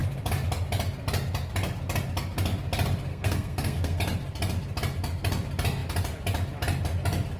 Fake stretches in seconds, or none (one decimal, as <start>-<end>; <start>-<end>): 3.1-4.0